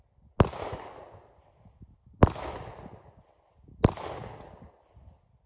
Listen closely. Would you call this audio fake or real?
real